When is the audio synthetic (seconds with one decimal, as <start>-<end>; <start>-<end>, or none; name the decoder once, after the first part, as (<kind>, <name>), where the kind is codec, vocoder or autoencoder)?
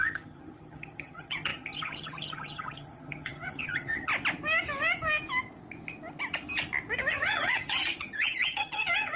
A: 0.0-4.1 (vocoder, HiFi-GAN); 7.1-9.2